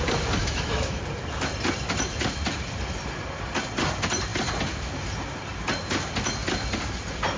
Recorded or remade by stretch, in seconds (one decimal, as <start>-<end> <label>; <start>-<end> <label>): 0.0-0.4 recorded; 0.4-1.0 remade; 1.0-7.4 recorded